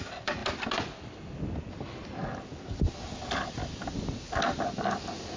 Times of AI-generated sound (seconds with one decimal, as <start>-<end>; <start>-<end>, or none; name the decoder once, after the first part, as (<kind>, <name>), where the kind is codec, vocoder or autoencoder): none